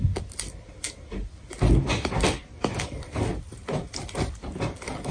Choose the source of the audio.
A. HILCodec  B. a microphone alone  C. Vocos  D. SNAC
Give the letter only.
B